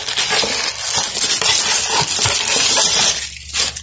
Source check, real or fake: real